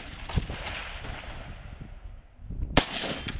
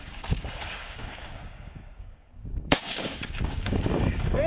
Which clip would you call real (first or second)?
first